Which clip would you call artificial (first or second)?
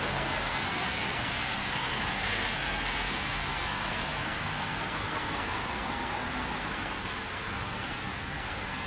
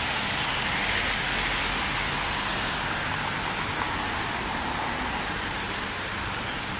first